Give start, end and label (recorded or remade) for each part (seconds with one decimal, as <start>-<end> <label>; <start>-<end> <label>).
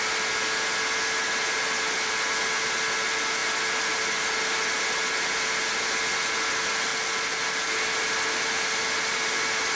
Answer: 0.0-6.9 recorded; 6.9-7.7 remade; 7.7-9.7 recorded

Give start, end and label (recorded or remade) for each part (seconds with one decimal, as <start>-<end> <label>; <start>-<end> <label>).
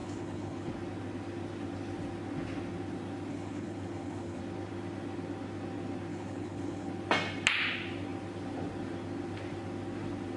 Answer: 0.0-0.7 remade; 0.7-3.3 recorded; 3.3-4.4 remade; 4.4-6.1 recorded; 6.1-6.9 remade; 6.9-10.4 recorded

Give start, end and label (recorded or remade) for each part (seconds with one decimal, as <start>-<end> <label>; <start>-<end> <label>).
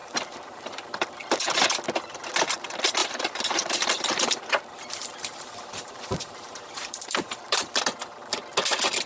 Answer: 0.0-1.3 remade; 1.3-3.0 recorded; 3.0-7.8 remade; 7.8-9.1 recorded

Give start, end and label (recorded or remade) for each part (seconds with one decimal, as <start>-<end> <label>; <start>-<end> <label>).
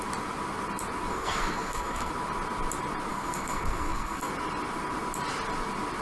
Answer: 0.0-1.1 recorded; 1.1-2.1 remade; 2.1-3.1 recorded; 3.1-4.3 remade; 4.3-6.0 recorded